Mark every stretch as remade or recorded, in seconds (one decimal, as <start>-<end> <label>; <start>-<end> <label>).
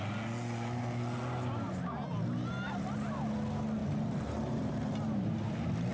0.0-3.8 recorded; 3.8-5.9 remade